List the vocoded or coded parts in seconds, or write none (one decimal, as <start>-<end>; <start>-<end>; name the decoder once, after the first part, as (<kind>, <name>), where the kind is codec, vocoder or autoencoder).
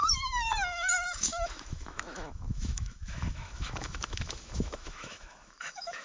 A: 0.0-6.0 (autoencoder, DAC-VAE)